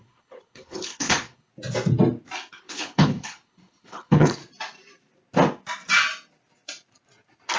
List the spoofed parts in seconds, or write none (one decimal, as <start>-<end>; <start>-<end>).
0.0-1.5; 2.5-4.4